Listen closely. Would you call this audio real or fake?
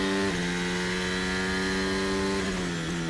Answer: real